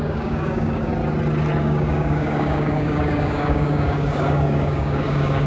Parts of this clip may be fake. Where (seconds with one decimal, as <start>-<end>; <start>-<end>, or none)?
0.0-0.9; 1.6-5.5